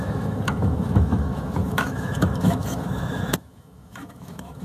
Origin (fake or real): fake